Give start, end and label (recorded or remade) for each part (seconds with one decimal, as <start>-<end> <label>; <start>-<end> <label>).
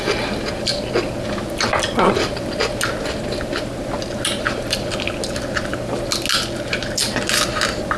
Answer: 0.0-8.0 recorded